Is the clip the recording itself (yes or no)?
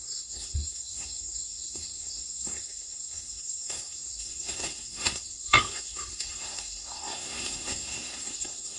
no